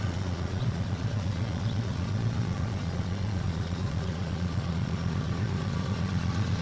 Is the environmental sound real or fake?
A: fake